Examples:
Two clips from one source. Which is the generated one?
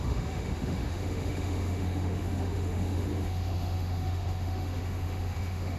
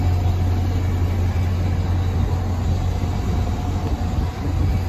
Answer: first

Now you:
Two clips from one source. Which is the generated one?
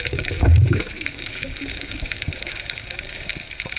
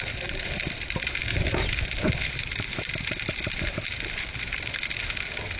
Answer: first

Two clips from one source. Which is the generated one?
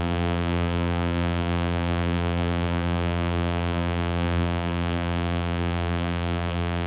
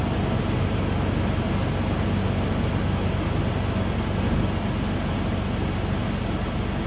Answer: first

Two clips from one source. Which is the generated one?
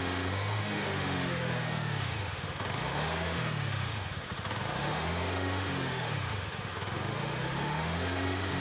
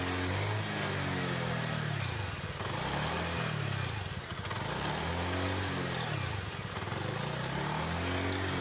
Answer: first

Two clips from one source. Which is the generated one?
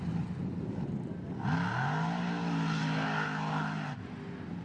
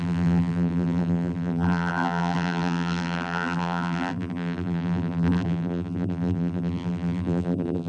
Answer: second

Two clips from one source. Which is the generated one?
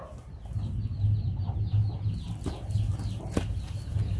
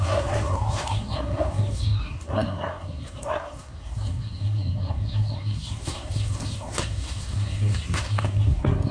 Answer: second